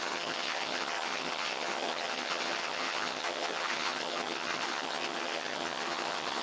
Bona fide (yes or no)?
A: no